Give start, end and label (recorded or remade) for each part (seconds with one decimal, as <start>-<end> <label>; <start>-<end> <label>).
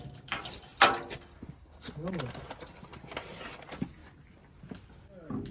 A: 0.0-5.5 recorded